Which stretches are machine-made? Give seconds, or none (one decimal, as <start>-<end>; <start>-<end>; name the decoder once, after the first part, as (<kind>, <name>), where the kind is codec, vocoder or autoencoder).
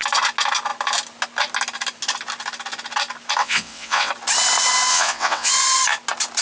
3.4-4.1 (vocoder, WaveNeXt); 4.9-5.5